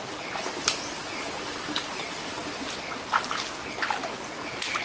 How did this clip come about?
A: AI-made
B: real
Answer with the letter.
B